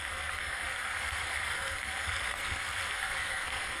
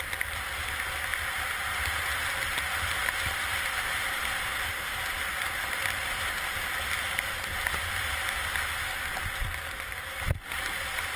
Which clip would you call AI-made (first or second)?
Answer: first